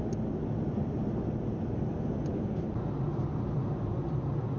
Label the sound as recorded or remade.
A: recorded